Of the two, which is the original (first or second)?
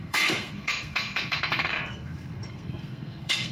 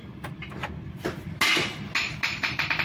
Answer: second